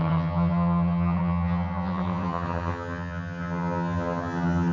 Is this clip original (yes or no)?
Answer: no